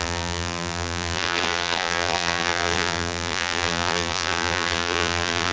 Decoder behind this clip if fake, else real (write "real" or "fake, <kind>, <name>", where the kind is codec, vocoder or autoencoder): fake, vocoder, BigVGAN v2